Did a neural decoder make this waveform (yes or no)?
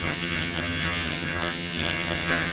yes